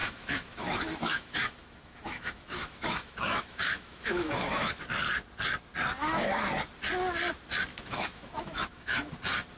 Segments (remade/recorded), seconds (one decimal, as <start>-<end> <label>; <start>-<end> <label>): 0.0-4.8 remade; 4.8-6.0 recorded; 6.0-6.5 remade; 6.5-7.7 recorded; 7.7-9.1 remade; 9.1-9.6 recorded